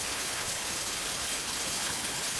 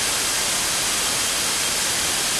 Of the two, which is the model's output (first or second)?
first